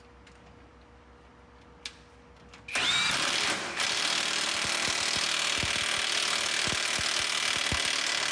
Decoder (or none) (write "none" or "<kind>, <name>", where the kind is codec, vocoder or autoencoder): none